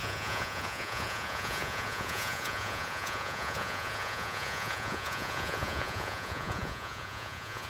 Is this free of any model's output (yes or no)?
no